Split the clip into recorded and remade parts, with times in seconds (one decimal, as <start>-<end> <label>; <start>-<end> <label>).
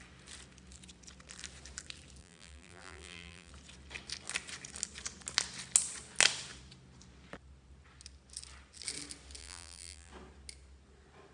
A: 0.0-2.2 recorded; 2.2-3.5 remade; 3.5-9.4 recorded; 9.4-10.1 remade; 10.1-11.3 recorded